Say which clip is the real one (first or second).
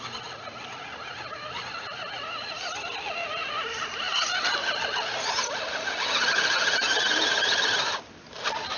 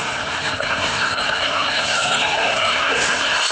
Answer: first